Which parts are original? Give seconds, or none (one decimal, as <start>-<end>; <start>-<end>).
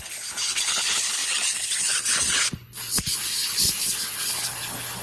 none